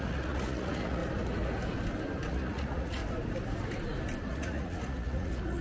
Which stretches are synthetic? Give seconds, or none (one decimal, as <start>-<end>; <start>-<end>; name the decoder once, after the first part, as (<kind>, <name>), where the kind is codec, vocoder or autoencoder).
0.0-1.0 (vocoder, Vocos); 2.3-3.0; 4.2-5.6